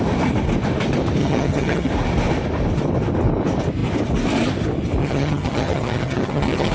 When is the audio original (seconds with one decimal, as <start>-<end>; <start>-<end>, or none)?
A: 0.0-1.2; 1.9-5.0